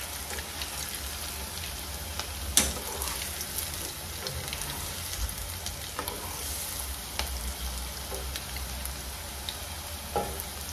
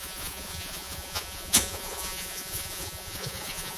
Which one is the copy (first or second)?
second